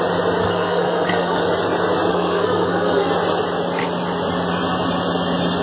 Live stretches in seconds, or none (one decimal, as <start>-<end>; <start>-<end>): 0.0-0.4; 1.4-2.1; 3.1-5.6